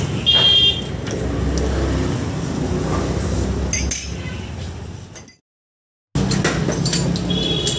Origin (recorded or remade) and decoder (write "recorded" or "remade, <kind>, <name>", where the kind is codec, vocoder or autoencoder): recorded